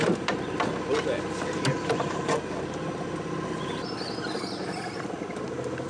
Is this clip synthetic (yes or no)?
no